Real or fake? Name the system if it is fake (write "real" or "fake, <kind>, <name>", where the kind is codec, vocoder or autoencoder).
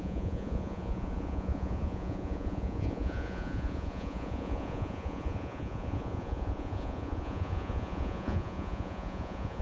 fake, vocoder, Vocos